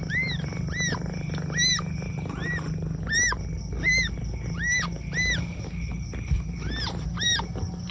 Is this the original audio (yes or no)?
yes